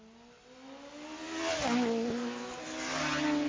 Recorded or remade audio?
recorded